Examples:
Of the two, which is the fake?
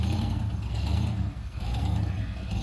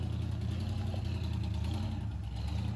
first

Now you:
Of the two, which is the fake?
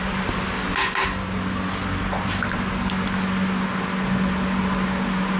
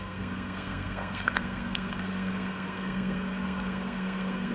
second